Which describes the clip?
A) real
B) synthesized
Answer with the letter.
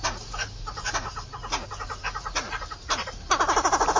A